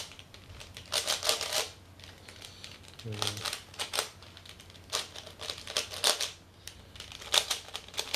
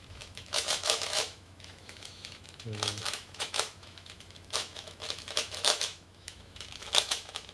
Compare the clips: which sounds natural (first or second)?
first